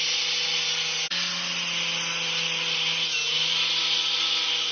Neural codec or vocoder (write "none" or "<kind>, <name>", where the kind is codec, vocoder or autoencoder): none